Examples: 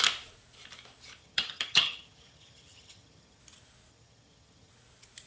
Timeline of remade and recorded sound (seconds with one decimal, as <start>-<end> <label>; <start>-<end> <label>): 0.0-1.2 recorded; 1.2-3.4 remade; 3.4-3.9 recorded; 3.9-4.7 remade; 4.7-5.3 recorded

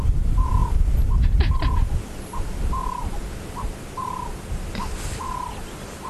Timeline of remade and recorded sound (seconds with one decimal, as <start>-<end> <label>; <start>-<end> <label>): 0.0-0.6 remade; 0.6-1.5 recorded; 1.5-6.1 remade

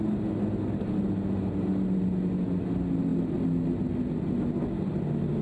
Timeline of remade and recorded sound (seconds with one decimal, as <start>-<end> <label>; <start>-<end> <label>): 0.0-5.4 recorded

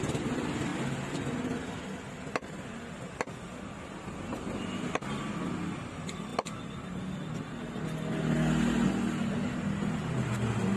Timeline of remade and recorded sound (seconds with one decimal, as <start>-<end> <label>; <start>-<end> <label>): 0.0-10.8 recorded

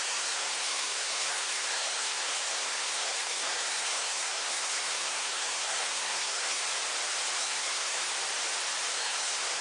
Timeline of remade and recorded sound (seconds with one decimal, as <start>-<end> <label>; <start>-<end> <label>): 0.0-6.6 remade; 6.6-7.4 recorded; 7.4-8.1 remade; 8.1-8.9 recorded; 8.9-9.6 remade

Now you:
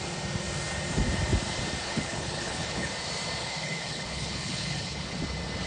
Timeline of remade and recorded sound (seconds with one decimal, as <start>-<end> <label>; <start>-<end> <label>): 0.0-1.8 recorded; 1.8-2.9 remade; 2.9-3.4 recorded; 3.4-5.2 remade; 5.2-5.7 recorded

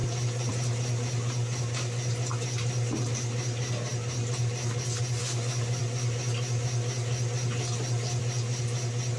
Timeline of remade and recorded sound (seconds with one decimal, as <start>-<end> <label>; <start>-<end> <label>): 0.0-0.5 remade; 0.5-9.2 recorded

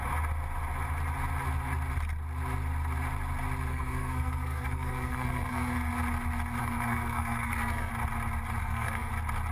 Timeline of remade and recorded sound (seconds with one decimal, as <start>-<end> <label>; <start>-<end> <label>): 0.0-3.7 recorded; 3.7-5.9 remade; 5.9-6.6 recorded; 6.6-7.9 remade; 7.9-8.6 recorded; 8.6-9.1 remade; 9.1-9.5 recorded